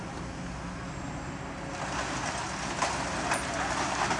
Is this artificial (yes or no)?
no